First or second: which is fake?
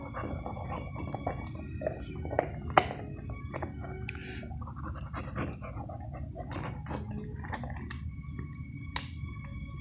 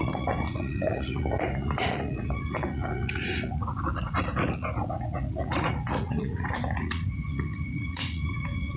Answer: second